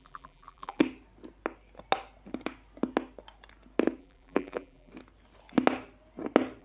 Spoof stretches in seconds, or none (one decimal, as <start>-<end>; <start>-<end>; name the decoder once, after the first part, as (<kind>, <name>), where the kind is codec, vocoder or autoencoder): 0.0-0.8 (vocoder, BigVGAN v2); 4.0-4.9

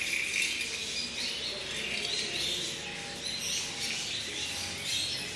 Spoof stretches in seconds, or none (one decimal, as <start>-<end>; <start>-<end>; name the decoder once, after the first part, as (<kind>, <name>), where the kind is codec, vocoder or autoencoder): none

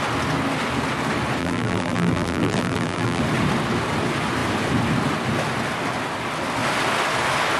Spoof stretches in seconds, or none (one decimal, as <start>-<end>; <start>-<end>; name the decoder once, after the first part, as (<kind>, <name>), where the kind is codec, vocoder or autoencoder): 1.4-3.2 (vocoder, BigVGAN v2)

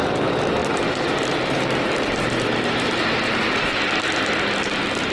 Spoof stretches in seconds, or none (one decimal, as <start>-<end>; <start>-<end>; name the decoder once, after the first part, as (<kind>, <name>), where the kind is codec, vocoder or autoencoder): 0.6-3.7 (vocoder, BigVGAN v2)

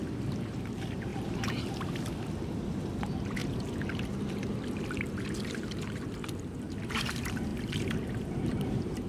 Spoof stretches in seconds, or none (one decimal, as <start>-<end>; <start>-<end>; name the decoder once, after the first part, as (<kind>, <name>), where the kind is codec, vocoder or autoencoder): 0.0-3.4 (vocoder, BigVGAN v2); 6.8-7.5; 8.2-9.1

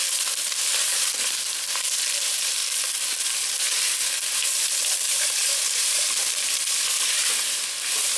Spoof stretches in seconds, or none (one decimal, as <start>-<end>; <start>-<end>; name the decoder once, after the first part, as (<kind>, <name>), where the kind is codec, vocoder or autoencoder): 0.0-2.6 (vocoder, BigVGAN v2); 3.6-8.2